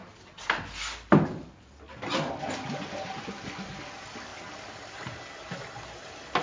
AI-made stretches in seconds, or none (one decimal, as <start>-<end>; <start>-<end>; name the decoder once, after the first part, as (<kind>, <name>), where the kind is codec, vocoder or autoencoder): none